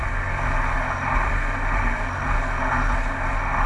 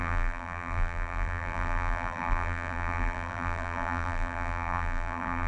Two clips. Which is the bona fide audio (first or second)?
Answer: first